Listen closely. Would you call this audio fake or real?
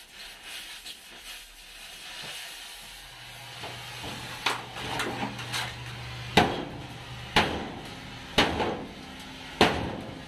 real